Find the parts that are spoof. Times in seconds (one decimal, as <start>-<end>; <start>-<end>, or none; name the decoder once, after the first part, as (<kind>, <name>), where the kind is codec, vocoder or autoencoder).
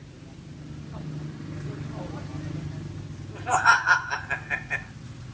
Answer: none